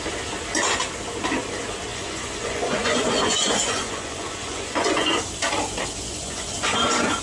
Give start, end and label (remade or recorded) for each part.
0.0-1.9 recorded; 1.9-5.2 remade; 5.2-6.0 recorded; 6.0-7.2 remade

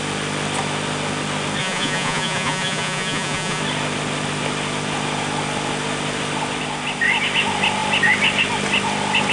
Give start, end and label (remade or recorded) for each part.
0.0-1.6 recorded; 1.6-3.6 remade; 3.6-9.3 recorded

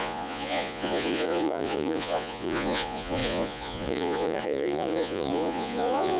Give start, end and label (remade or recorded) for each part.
0.0-6.2 remade